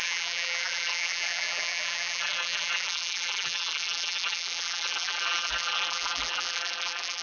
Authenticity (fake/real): fake